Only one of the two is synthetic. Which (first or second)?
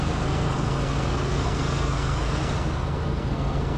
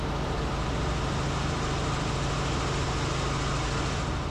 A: first